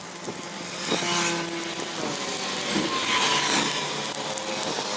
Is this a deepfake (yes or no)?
no